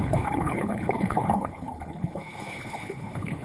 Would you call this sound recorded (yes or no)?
no